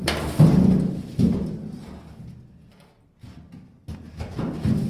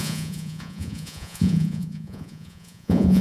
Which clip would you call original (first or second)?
first